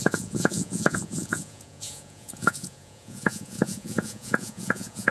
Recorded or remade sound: remade